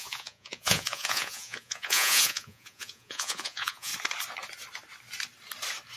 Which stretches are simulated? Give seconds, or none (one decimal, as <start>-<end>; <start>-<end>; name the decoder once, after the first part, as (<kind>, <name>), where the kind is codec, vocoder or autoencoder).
0.0-3.9 (vocoder, Vocos)